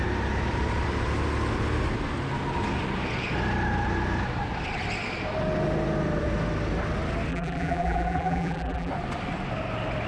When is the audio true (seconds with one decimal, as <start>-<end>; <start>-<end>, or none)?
0.0-7.3; 8.9-10.1